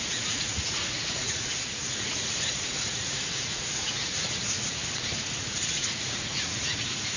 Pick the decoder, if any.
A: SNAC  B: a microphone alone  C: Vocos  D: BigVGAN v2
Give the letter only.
C